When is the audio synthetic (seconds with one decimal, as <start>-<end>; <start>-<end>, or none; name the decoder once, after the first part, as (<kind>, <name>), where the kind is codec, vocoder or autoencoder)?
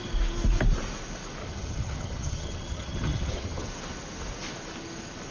1.4-3.7 (vocoder, HiFi-GAN)